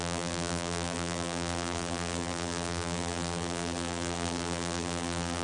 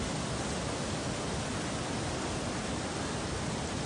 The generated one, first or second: first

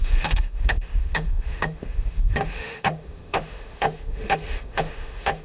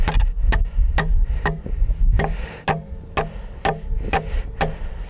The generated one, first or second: first